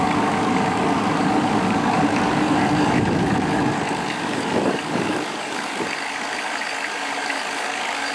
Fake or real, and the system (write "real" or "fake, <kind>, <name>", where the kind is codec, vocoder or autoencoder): fake, codec, DAC